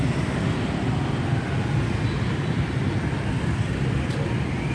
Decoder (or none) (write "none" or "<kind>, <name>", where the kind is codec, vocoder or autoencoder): none